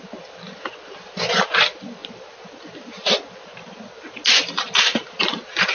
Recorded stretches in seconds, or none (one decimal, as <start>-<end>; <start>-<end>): 0.0-5.7